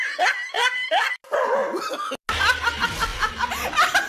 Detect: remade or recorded recorded